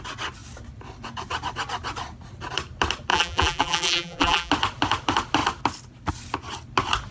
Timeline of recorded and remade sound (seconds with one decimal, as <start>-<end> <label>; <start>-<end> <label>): 0.0-3.1 recorded; 3.1-4.5 remade; 4.5-7.1 recorded